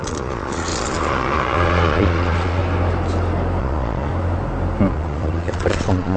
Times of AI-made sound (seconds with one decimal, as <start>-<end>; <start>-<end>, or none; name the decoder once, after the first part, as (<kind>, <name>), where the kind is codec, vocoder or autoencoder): 0.0-2.6 (vocoder, Vocos); 3.6-4.1; 4.9-6.2